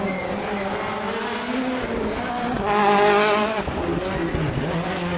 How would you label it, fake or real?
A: real